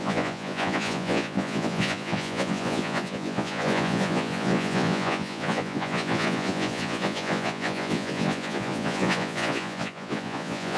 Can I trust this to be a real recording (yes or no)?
no